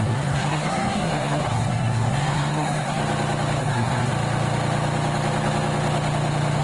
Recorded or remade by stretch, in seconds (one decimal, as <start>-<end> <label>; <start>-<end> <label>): 0.0-3.0 remade; 3.0-3.6 recorded; 3.6-4.1 remade; 4.1-6.6 recorded